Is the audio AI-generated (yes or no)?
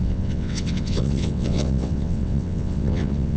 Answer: yes